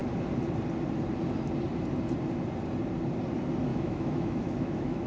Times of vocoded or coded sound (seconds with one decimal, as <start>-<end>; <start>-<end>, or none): 3.7-5.1

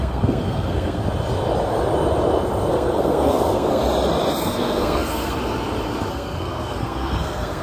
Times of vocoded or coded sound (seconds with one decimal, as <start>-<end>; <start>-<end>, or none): 0.0-1.0; 2.7-3.8; 4.4-5.4; 6.1-7.6

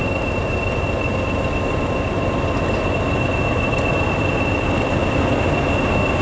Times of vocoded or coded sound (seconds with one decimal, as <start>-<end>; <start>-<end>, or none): none

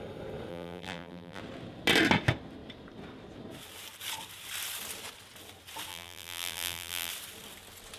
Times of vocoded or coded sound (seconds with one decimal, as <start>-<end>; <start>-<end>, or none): 0.5-1.4; 5.9-7.1

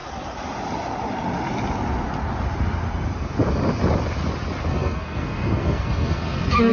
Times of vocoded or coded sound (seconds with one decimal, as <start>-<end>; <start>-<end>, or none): 4.7-6.7

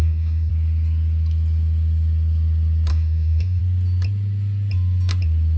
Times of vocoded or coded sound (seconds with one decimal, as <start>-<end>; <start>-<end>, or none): 0.0-0.5; 2.9-3.6